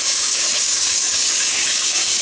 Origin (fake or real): fake